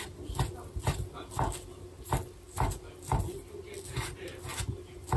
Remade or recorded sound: recorded